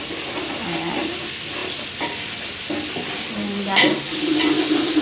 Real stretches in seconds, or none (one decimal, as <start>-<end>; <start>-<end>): 0.0-5.0